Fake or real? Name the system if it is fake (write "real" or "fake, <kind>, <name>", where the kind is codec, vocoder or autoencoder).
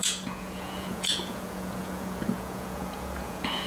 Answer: fake, vocoder, Vocos